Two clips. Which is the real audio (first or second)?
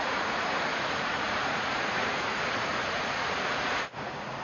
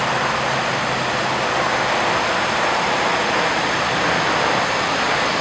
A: second